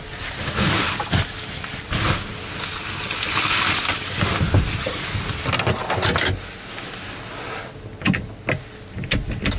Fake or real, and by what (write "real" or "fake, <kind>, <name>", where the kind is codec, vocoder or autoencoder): real